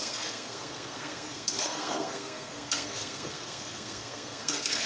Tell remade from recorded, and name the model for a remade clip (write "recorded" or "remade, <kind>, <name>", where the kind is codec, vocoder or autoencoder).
remade, codec, SNAC